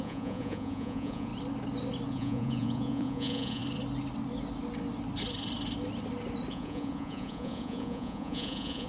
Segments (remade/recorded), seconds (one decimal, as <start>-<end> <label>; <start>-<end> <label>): 0.0-1.3 remade; 1.3-2.1 recorded; 2.1-3.6 remade; 3.6-6.5 recorded; 6.5-8.9 remade